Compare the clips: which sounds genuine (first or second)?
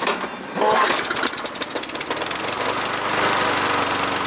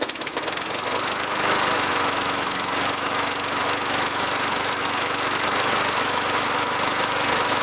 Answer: first